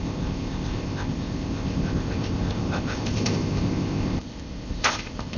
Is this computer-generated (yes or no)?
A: yes